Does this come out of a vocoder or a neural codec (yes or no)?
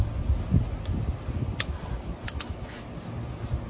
no